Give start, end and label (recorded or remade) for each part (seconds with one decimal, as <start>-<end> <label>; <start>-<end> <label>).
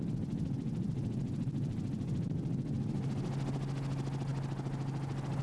0.0-5.4 recorded